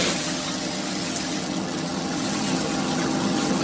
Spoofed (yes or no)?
yes